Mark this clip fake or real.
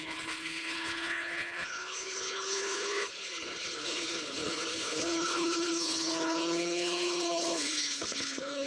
fake